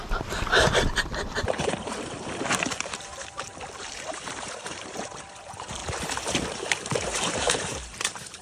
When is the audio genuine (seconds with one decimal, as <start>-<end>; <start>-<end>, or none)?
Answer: 3.5-4.1; 5.8-6.5